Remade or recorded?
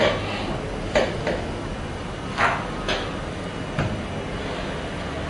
recorded